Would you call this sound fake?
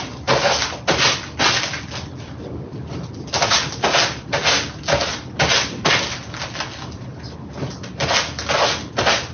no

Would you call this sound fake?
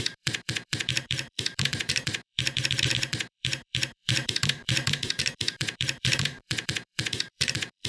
yes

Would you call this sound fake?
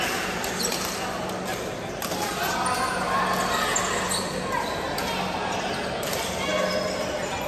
no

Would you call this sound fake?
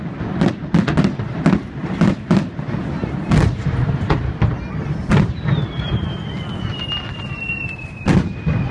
no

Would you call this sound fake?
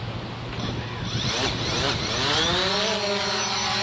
no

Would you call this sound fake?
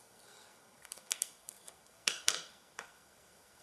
yes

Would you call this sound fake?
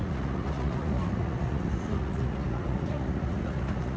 yes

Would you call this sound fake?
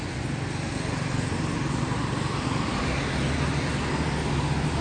no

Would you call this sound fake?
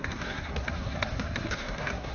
yes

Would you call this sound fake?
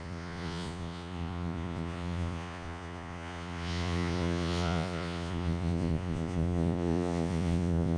yes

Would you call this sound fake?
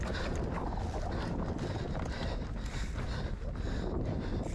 no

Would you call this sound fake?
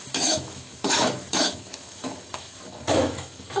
yes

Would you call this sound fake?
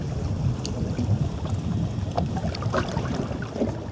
no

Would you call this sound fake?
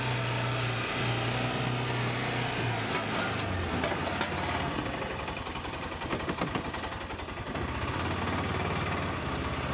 no